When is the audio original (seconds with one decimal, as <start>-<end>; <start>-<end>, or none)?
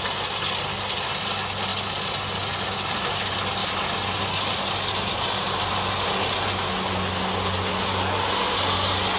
0.0-9.2